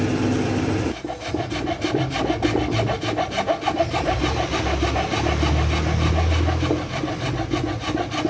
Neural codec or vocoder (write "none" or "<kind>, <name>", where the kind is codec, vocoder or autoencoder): none